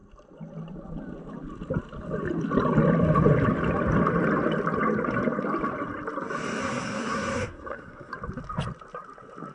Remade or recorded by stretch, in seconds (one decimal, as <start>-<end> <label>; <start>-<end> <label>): 0.0-6.6 recorded; 6.6-8.1 remade; 8.1-9.5 recorded